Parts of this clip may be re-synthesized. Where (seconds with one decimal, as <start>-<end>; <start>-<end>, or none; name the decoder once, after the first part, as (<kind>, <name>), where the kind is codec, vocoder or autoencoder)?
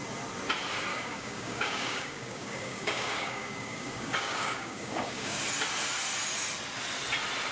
0.9-5.4 (codec, DAC)